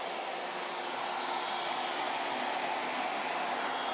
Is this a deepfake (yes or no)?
no